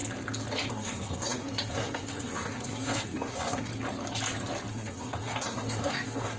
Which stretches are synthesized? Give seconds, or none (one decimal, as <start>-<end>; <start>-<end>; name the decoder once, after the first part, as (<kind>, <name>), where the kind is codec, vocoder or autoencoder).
0.7-3.7 (codec, SNAC); 4.7-6.4